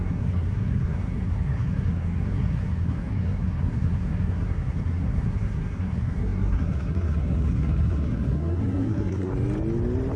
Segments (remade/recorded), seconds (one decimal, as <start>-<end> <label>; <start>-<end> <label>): 0.0-9.3 remade; 9.3-10.2 recorded